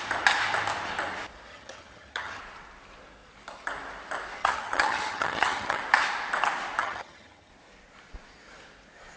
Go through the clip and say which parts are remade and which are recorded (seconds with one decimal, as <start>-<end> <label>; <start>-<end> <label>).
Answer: 0.0-1.5 recorded; 1.5-2.4 remade; 2.4-4.4 recorded; 4.4-5.8 remade; 5.8-6.8 recorded; 6.8-7.5 remade; 7.5-9.2 recorded